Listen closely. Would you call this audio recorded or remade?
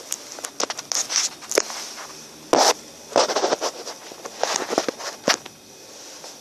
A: recorded